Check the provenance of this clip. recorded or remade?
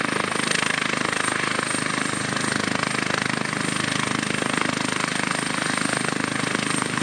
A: recorded